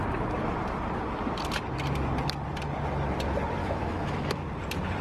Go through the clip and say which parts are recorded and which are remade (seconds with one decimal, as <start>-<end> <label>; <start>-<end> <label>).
0.0-3.6 recorded; 3.6-4.4 remade; 4.4-5.0 recorded